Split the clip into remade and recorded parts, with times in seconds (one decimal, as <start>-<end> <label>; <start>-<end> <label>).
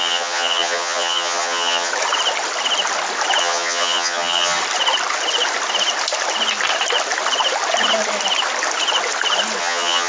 0.0-1.9 remade; 1.9-3.4 recorded; 3.4-4.6 remade; 4.6-9.6 recorded; 9.6-10.1 remade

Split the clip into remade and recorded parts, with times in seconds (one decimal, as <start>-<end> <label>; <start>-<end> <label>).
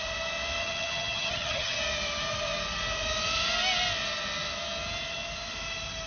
0.0-0.6 recorded; 0.6-1.8 remade; 1.8-6.1 recorded